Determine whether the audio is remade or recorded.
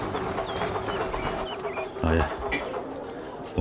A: recorded